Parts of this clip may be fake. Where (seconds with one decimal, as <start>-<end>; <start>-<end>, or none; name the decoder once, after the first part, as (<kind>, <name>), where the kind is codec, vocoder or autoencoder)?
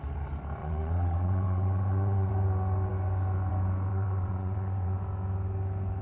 0.6-2.3 (vocoder, WaveNeXt); 3.9-5.0